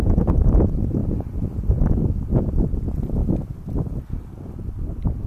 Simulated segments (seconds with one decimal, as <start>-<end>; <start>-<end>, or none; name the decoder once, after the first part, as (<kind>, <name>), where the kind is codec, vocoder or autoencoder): 0.0-1.0 (vocoder, BigVGAN v2); 2.4-5.3